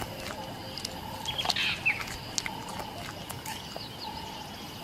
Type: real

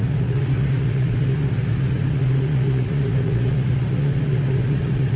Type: fake